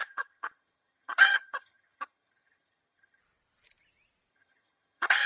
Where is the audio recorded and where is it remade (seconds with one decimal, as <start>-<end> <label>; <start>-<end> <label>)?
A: 0.0-3.2 remade; 3.2-4.3 recorded; 4.3-5.3 remade

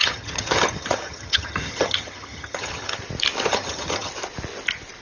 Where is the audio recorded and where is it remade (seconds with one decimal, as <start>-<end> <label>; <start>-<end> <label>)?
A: 0.0-3.0 remade; 3.0-3.5 recorded; 3.5-4.1 remade; 4.1-5.0 recorded